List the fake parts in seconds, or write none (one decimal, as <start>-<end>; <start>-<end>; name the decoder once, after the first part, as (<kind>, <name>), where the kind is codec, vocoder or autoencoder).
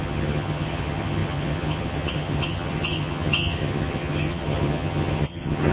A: 0.0-5.7 (vocoder, HiFi-GAN)